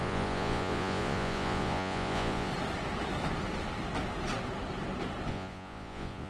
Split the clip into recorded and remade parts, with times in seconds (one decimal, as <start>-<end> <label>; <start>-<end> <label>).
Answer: 0.0-2.5 remade; 2.5-5.3 recorded; 5.3-6.3 remade